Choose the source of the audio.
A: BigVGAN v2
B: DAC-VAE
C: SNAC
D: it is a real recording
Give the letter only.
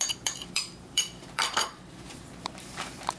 A